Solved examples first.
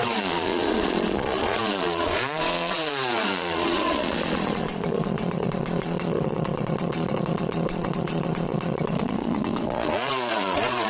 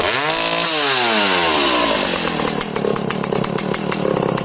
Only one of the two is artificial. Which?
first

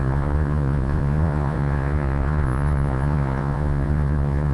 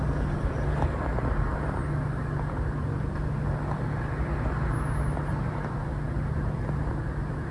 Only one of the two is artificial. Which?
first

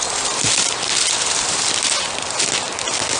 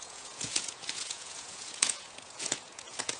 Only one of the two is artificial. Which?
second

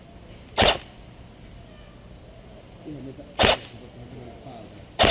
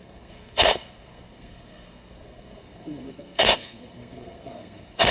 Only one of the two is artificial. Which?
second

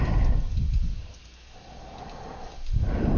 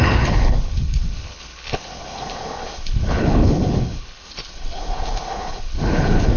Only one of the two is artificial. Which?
second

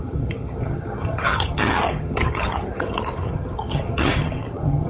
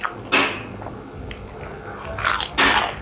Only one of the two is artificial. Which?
first